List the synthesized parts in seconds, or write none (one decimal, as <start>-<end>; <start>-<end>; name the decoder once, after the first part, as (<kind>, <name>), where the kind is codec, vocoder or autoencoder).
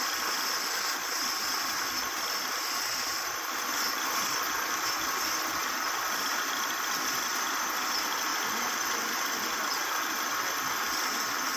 5.6-6.4 (vocoder, BigVGAN v2); 8.3-9.8